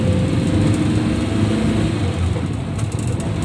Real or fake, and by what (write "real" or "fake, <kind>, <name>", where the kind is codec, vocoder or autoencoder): real